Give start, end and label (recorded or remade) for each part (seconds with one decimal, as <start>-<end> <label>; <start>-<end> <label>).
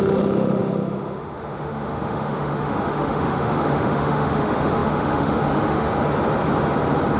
0.0-5.9 remade; 5.9-7.2 recorded